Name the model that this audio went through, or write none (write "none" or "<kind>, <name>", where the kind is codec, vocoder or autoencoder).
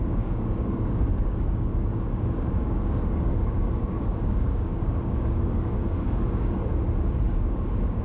codec, DAC